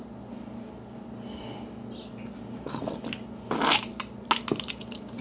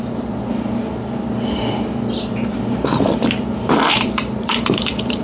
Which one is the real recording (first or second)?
first